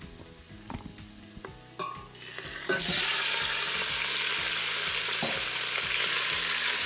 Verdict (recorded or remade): recorded